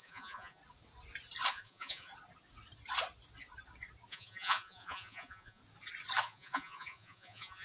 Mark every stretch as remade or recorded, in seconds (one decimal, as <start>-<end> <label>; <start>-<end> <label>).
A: 0.0-0.6 remade; 0.6-1.5 recorded; 1.5-2.1 remade; 2.1-4.1 recorded; 4.1-5.6 remade; 5.6-6.2 recorded; 6.2-7.6 remade